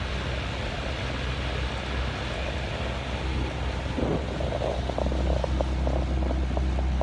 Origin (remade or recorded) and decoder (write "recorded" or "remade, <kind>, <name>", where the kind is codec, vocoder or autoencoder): recorded